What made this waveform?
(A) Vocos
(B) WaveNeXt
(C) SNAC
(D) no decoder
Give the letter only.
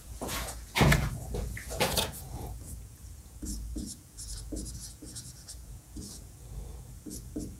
A